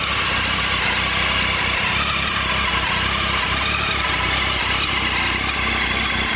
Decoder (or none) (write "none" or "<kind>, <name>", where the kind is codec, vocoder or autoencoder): none